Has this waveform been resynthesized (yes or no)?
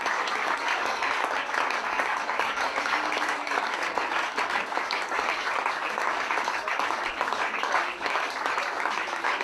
yes